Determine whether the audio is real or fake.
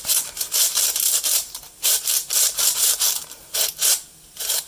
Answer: fake